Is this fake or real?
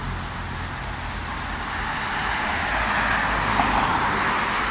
real